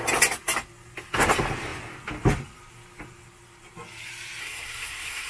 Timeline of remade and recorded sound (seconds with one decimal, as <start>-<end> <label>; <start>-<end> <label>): 0.0-4.4 recorded; 4.4-5.3 remade